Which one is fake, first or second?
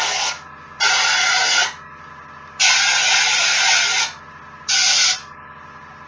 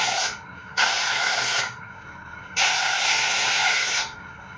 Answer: second